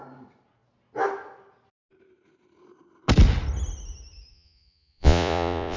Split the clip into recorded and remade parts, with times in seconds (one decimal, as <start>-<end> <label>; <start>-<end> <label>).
0.0-4.3 recorded; 4.3-5.8 remade